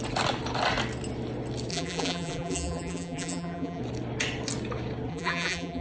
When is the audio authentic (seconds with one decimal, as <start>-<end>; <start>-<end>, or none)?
0.0-1.7; 3.8-5.1